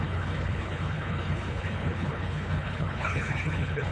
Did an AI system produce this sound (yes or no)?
yes